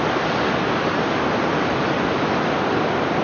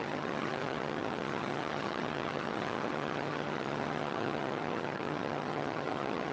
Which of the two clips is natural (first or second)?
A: first